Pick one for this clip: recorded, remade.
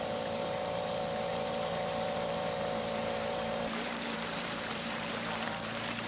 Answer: remade